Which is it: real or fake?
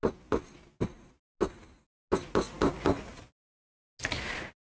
real